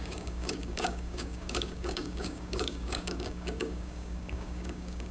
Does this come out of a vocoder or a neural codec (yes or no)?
yes